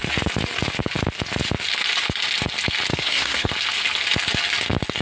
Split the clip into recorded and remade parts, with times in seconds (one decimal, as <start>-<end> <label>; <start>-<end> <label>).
0.0-2.9 recorded; 2.9-3.5 remade; 3.5-5.0 recorded